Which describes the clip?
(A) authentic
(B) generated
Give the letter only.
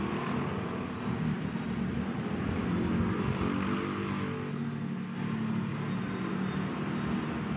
A